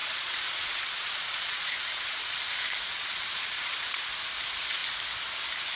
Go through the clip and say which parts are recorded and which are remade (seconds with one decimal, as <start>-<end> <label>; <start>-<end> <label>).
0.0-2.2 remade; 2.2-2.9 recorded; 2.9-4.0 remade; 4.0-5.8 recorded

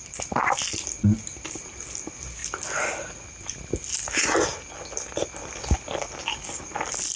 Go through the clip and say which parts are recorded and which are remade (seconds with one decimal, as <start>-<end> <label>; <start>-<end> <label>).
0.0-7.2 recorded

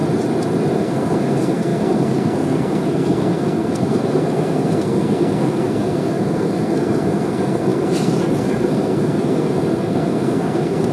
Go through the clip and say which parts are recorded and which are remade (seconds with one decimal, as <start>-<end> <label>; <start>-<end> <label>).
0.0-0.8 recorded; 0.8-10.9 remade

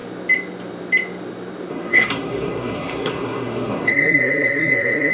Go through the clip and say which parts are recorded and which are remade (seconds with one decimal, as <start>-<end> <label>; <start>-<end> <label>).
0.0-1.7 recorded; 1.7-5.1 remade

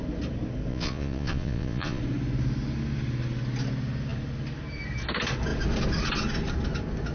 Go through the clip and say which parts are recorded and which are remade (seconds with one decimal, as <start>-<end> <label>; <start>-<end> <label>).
0.0-0.7 recorded; 0.7-2.0 remade; 2.0-7.1 recorded